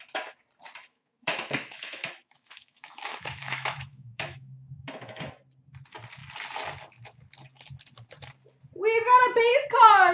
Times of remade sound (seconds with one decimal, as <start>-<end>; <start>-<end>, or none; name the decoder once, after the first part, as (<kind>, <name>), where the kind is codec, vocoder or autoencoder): 0.9-5.3 (autoencoder, DAC-VAE)